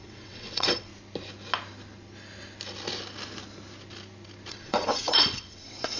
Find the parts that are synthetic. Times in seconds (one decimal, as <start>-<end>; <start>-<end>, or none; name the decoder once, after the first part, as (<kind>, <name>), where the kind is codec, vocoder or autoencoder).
0.0-0.9 (vocoder, WaveNeXt); 4.5-6.0